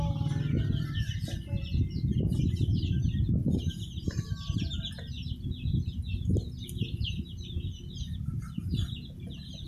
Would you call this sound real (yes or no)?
yes